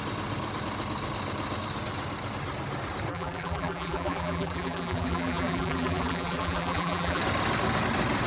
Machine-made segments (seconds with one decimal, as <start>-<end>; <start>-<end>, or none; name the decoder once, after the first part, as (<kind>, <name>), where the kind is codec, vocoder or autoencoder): 3.1-7.2 (vocoder, BigVGAN v2)